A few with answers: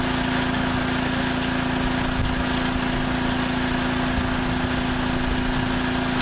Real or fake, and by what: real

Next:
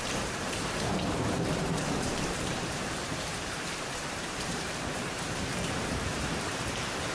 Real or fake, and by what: fake, vocoder, BigVGAN v2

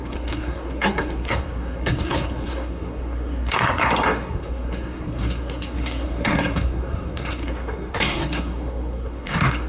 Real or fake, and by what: fake, codec, SNAC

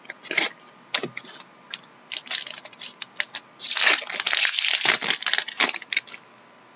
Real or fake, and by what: real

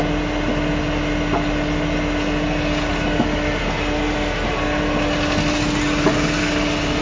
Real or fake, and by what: real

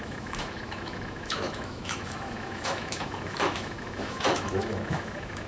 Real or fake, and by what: fake, autoencoder, DAC-VAE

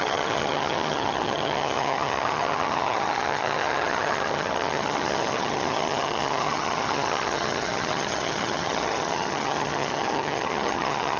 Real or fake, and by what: fake, vocoder, HiFi-GAN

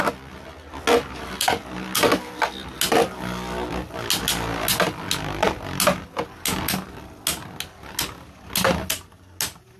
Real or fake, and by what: real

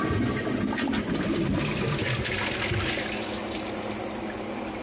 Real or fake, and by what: real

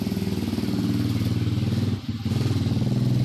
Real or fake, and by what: real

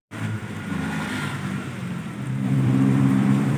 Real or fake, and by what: fake, vocoder, BigVGAN v2